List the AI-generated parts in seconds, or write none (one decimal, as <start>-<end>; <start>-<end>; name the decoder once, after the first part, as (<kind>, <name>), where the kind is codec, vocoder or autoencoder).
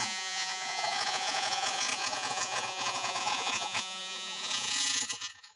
0.0-5.6 (vocoder, Vocos)